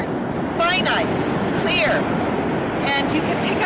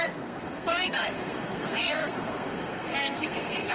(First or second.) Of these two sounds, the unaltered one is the first